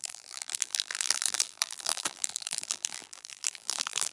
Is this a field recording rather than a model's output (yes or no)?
no